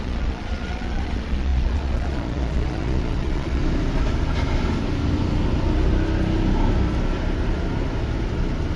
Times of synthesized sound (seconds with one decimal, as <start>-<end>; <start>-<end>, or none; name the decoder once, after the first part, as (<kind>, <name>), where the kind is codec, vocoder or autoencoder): 0.0-3.6 (vocoder, Vocos)